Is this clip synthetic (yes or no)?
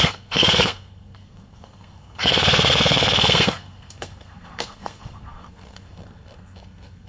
yes